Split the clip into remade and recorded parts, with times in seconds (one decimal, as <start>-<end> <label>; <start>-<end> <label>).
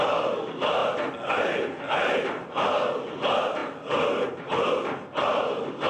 0.0-5.9 recorded